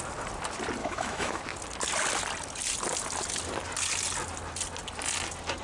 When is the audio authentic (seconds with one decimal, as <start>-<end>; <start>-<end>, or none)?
0.0-0.8; 1.4-5.6